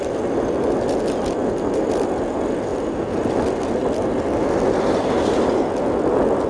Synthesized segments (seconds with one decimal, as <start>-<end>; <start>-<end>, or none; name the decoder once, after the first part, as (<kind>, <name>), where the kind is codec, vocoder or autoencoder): none